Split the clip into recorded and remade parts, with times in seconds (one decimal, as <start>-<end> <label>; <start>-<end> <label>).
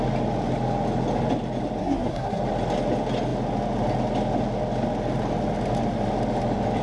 0.0-1.8 recorded; 1.8-2.4 remade; 2.4-6.8 recorded